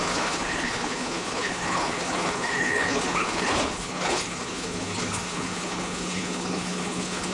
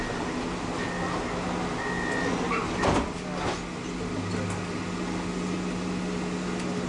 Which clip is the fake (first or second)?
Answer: first